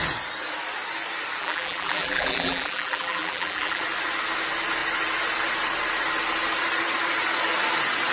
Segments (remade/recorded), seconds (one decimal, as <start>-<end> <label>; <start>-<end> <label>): 0.0-1.4 recorded; 1.4-3.8 remade; 3.8-8.1 recorded